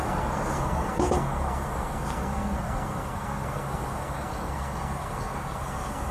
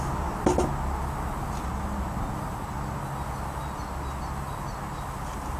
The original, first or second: second